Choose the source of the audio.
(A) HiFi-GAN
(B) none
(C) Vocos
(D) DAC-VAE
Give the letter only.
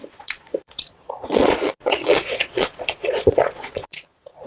C